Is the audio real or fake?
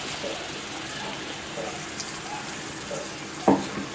real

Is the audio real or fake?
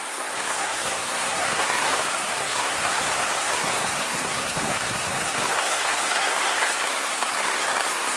fake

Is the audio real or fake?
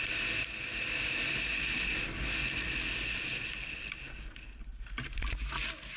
real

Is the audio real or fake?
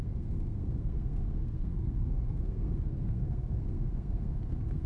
fake